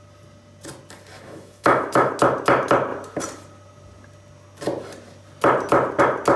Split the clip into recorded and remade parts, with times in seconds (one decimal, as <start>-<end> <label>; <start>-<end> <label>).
0.0-1.1 recorded; 1.1-2.1 remade; 2.1-6.4 recorded